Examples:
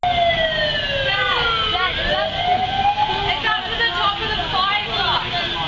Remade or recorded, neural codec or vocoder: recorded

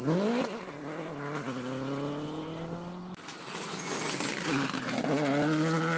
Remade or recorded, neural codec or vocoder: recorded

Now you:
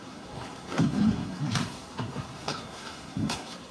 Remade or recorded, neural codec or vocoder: remade, codec, SNAC